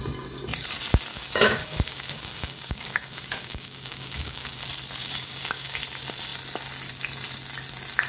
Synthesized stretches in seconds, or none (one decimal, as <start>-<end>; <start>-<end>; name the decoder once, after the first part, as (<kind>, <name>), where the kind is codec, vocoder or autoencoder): 1.1-4.6 (codec, DAC); 5.0-5.8